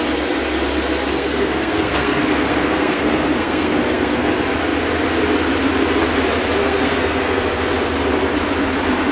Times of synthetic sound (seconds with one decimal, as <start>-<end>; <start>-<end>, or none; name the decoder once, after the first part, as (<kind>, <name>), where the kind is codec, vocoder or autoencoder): 1.1-4.3 (codec, SNAC); 6.6-7.4